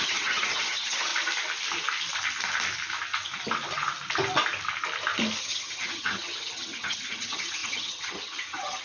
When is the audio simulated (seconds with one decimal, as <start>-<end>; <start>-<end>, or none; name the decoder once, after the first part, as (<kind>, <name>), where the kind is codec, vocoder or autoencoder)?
0.0-1.1 (vocoder, HiFi-GAN); 5.4-8.8